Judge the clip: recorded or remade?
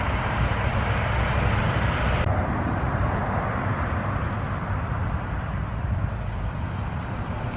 recorded